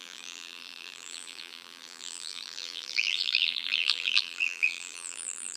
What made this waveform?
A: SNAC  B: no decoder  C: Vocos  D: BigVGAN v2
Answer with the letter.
D